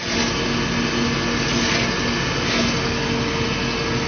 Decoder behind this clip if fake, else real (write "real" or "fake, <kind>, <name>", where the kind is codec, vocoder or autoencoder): real